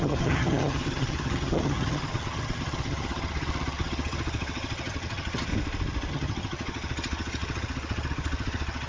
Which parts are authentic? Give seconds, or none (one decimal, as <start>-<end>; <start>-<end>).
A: 5.5-6.1